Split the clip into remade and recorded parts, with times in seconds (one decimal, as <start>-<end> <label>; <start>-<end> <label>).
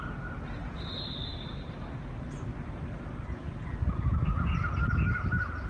0.0-5.7 recorded